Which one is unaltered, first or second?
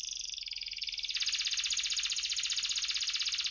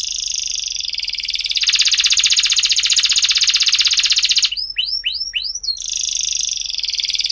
first